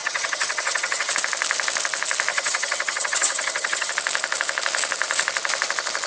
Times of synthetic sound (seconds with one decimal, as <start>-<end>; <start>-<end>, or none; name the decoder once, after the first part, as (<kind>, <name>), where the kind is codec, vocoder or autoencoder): 0.0-1.1 (vocoder, HiFi-GAN); 2.3-3.9